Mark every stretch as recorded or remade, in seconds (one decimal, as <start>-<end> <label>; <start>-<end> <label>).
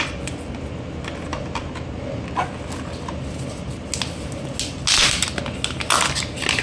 0.0-6.6 recorded